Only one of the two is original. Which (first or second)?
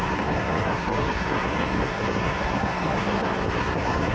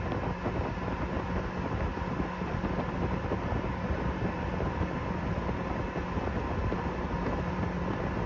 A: second